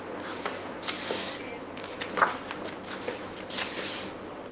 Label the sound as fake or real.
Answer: real